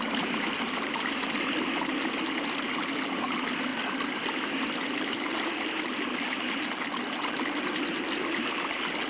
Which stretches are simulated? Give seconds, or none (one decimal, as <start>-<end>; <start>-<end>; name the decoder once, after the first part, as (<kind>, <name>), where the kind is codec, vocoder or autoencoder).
none